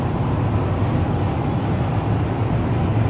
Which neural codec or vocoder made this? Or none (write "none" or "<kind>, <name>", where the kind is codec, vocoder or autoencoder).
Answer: none